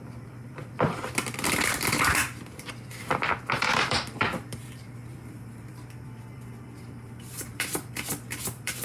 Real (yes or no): no